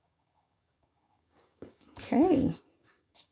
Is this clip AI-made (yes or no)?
yes